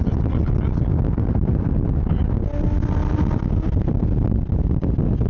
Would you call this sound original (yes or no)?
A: yes